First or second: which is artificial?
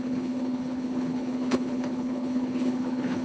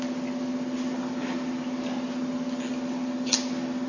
first